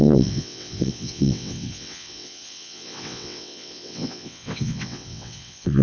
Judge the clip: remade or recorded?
remade